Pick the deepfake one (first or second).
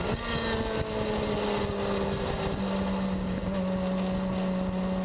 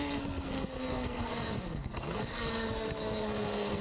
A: second